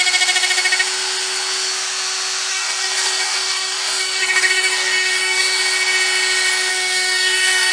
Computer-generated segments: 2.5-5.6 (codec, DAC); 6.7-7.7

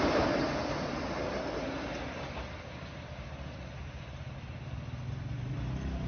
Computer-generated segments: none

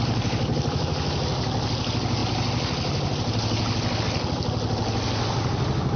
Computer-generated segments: none

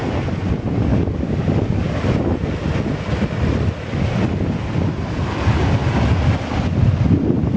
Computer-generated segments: 0.9-1.9 (codec, DAC)

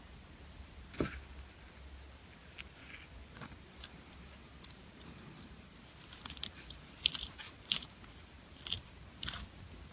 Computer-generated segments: 2.8-3.5 (vocoder, Vocos)